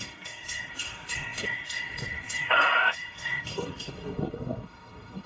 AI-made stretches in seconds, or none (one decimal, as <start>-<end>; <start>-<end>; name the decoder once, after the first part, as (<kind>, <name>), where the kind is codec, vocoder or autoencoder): 0.0-5.3 (codec, SNAC)